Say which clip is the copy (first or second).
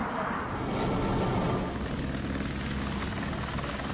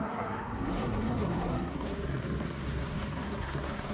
second